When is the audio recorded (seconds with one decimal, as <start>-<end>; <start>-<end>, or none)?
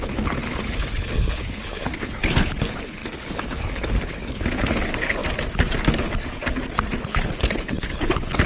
5.2-7.1